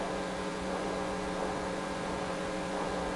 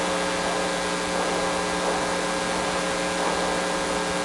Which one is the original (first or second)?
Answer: second